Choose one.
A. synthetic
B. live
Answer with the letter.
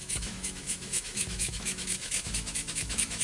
A